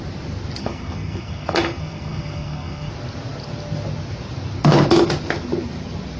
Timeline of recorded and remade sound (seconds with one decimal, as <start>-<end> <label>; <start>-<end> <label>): 0.0-0.6 recorded; 0.6-2.9 remade; 2.9-6.2 recorded